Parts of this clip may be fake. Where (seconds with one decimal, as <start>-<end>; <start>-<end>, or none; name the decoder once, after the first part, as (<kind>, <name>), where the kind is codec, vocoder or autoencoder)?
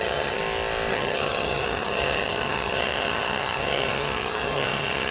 0.0-0.4 (vocoder, HiFi-GAN); 0.9-5.1